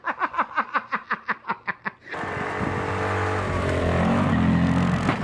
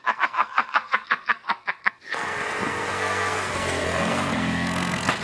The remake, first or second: second